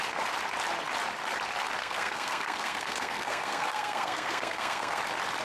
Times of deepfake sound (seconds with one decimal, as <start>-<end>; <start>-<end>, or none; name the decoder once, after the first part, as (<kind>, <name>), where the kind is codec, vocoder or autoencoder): 1.8-5.0 (codec, SNAC)